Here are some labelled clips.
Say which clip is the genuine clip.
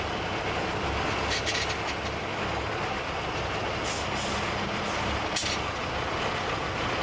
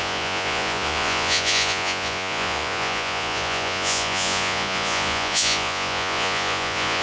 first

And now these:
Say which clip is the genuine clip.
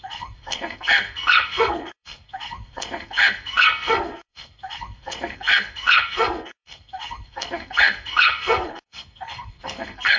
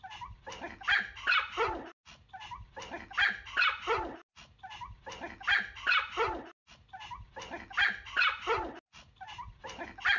second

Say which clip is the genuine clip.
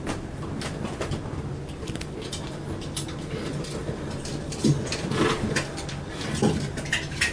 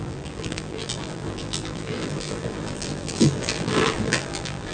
first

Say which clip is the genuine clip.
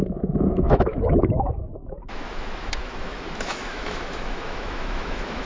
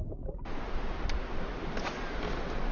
second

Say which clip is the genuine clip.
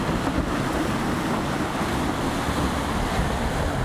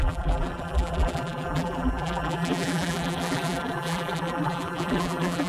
first